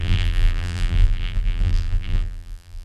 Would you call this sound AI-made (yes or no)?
yes